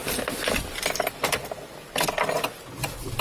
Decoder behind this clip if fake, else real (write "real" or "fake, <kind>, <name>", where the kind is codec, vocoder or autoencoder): real